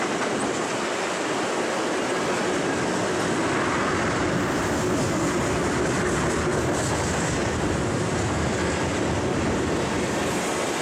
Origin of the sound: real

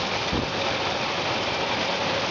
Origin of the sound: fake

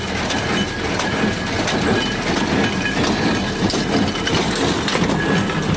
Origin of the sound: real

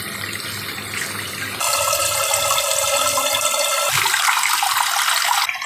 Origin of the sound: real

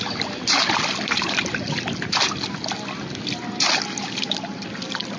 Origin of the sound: real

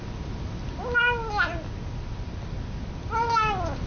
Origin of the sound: real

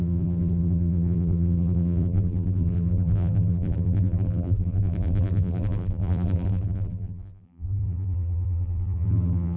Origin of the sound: fake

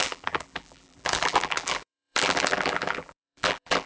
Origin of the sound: fake